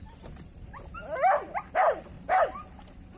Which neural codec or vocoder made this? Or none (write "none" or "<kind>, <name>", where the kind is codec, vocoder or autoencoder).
none